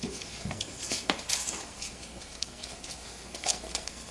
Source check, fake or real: fake